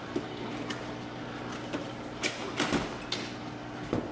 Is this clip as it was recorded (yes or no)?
yes